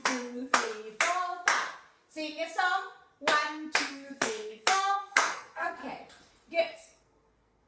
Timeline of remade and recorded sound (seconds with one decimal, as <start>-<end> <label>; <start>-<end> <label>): 0.0-0.7 remade; 0.7-3.9 recorded; 3.9-5.8 remade; 5.8-6.6 recorded; 6.6-7.7 remade